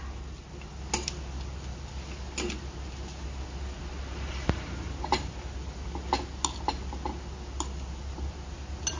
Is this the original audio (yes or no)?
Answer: yes